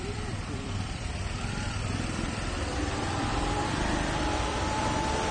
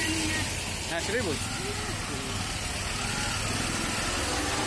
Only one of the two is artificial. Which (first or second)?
first